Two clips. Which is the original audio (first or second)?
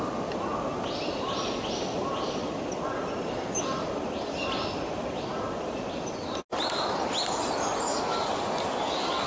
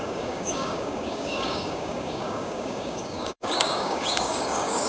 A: first